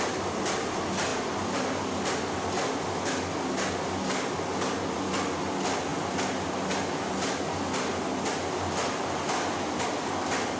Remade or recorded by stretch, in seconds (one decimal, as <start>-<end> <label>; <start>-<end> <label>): 0.0-10.6 recorded

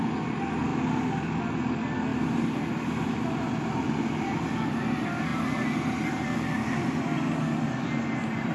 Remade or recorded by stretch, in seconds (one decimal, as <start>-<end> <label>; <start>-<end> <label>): 0.0-8.5 recorded

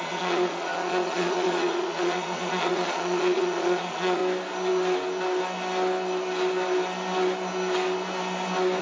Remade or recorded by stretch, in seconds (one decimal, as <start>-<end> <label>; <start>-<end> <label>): 0.0-4.2 remade; 4.2-8.8 recorded

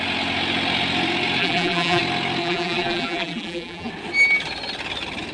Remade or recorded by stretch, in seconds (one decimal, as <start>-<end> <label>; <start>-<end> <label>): 0.0-1.4 recorded; 1.4-2.0 remade; 2.0-2.4 recorded; 2.4-3.9 remade; 3.9-5.3 recorded

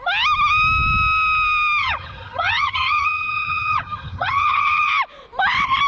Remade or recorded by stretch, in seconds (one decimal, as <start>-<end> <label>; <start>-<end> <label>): 0.0-1.8 recorded; 1.8-4.9 remade; 4.9-5.9 recorded

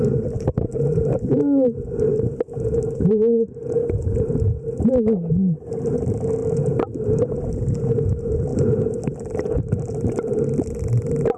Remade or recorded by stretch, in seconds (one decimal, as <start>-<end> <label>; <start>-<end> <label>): 0.0-6.4 recorded; 6.4-7.4 remade; 7.4-11.4 recorded

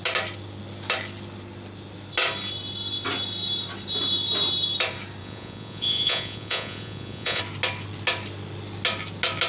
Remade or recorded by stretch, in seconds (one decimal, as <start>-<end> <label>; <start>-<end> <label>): 0.0-5.2 recorded; 5.2-7.4 remade; 7.4-9.5 recorded